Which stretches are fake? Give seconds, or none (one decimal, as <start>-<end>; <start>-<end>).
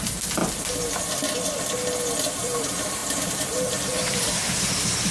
0.0-0.4; 2.3-5.1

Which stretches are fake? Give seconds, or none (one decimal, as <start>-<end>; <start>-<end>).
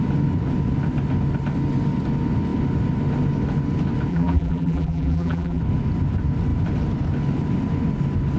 4.1-5.6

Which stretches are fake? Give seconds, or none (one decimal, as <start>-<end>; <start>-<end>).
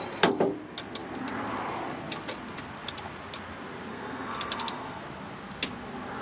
3.9-5.0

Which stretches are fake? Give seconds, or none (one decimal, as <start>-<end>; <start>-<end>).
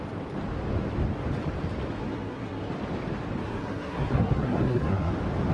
2.0-2.7; 3.4-5.1